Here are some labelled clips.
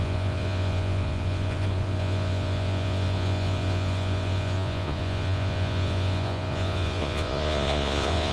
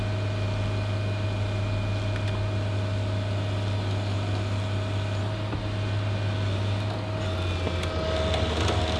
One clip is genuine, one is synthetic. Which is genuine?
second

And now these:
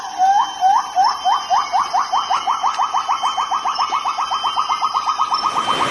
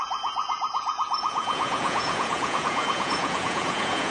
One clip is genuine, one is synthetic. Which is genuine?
first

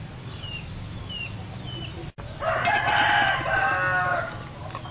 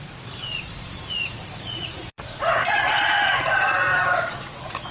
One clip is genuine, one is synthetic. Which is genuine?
first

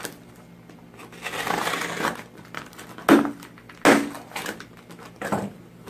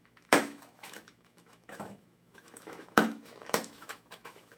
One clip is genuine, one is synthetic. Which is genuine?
first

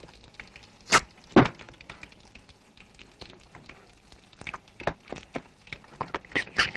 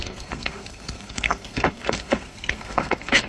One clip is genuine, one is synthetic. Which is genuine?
first